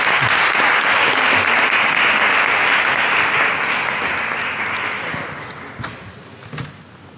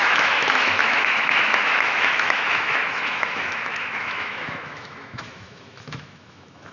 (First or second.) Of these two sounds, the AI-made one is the second